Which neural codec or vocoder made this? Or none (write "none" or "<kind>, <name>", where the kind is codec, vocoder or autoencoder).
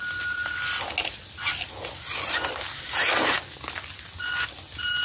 none